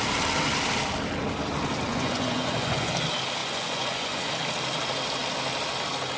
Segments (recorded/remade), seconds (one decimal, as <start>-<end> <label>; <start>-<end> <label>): 0.0-1.9 recorded; 1.9-2.9 remade; 2.9-3.4 recorded; 3.4-4.3 remade; 4.3-6.2 recorded